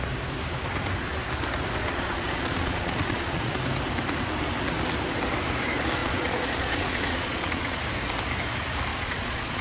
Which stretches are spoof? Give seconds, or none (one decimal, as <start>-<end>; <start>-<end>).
1.8-3.5; 6.0-7.8; 8.9-9.6